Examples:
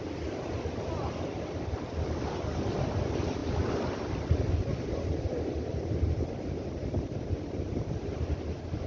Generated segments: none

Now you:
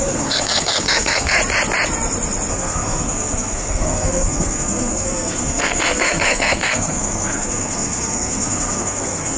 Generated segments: 0.0-1.4 (codec, SNAC); 2.5-9.4

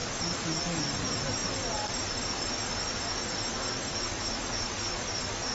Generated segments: none

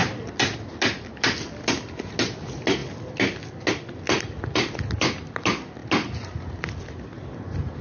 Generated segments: none

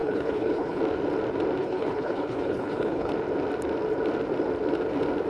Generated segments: 0.0-0.8 (codec, HILCodec); 1.6-3.1

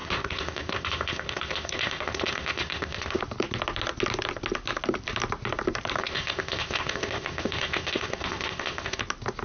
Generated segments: 0.0-3.2 (codec, ZipCodec); 6.0-9.0

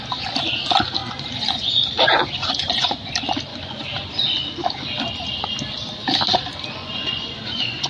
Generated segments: 1.0-3.1 (vocoder, Vocos); 3.5-4.1; 6.8-7.9

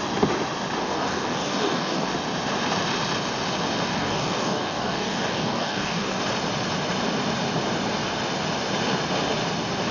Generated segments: 0.8-2.1 (codec, DAC); 3.9-6.2